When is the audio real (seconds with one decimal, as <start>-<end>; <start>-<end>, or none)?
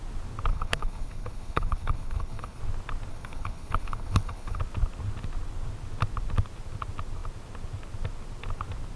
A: 0.0-0.5; 2.6-3.1; 4.6-9.0